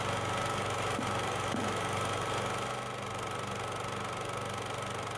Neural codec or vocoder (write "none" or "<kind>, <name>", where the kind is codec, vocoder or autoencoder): none